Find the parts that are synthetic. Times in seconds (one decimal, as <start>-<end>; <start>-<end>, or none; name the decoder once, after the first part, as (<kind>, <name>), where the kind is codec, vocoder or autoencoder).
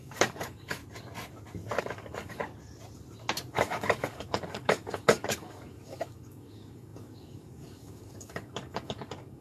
0.0-0.8 (codec, DAC); 1.8-2.4; 3.5-9.4